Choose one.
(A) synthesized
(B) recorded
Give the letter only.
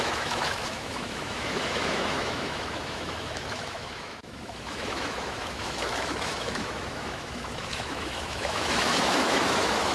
A